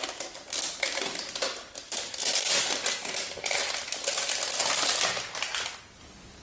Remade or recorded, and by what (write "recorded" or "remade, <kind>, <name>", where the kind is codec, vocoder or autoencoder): recorded